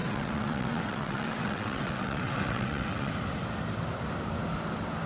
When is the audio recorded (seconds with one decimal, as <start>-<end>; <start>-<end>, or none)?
3.1-5.1